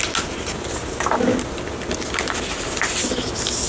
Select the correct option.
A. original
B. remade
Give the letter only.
A